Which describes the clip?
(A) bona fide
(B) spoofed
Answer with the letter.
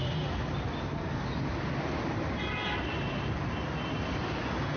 A